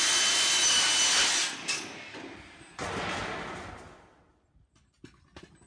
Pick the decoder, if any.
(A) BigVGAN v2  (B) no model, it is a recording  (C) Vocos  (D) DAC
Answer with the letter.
B